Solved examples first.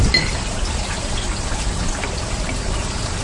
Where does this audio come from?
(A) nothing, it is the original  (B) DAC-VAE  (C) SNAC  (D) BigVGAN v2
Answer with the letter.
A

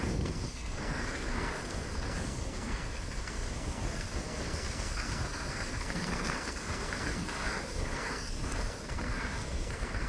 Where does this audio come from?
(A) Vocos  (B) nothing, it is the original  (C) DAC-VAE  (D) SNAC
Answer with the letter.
D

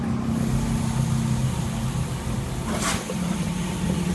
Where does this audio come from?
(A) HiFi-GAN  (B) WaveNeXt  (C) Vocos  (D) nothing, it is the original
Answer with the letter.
D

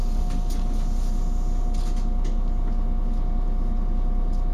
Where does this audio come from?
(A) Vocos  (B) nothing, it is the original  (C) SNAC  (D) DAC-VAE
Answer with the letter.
B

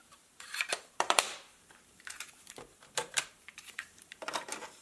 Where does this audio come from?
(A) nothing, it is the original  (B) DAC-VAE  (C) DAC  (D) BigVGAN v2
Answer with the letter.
D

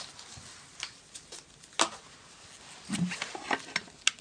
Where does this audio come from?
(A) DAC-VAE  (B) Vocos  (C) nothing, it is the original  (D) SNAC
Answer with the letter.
C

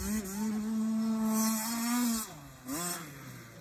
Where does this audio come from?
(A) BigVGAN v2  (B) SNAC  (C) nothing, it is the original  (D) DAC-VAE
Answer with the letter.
C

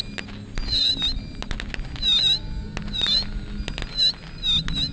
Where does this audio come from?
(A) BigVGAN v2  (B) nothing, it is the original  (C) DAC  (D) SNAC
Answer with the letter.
B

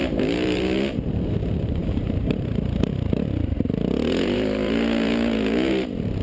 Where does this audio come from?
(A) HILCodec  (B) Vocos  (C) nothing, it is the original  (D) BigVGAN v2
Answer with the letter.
D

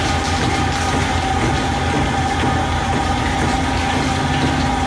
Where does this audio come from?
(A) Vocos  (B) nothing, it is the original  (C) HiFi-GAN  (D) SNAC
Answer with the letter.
B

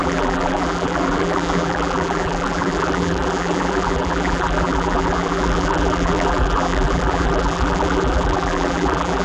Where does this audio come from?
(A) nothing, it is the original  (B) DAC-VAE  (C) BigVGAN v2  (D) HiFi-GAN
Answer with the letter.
C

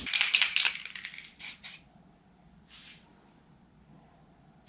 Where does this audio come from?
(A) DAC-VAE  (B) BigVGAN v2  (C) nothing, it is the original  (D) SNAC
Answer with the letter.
B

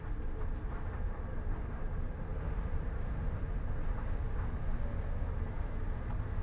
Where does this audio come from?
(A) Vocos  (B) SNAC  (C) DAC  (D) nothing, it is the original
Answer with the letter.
D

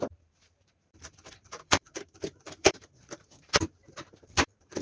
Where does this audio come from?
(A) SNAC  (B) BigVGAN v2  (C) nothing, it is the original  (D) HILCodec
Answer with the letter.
B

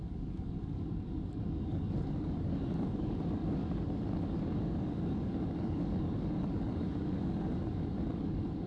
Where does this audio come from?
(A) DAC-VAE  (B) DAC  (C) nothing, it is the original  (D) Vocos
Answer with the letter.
B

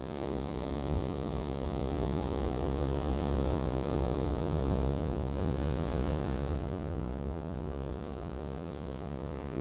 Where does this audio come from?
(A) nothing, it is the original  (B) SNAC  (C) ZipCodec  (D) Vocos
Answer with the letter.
D